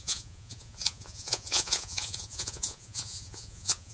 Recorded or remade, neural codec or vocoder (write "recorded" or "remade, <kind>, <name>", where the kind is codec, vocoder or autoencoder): remade, vocoder, Vocos